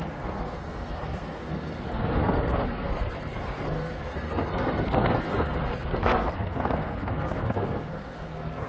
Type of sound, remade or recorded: remade